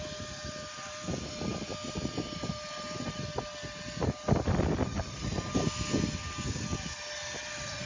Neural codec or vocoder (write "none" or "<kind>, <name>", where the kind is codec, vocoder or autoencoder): none